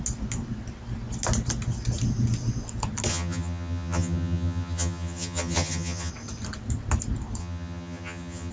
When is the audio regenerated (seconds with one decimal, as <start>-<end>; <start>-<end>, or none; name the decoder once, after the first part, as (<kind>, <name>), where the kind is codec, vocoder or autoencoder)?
3.1-6.1 (vocoder, HiFi-GAN); 7.4-8.5